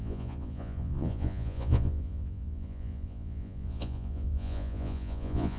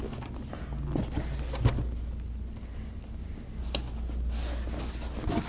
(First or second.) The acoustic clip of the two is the second